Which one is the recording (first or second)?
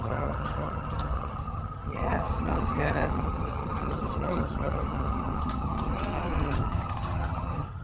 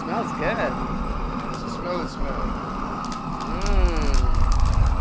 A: second